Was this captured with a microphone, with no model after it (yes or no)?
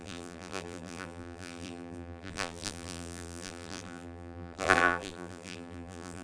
no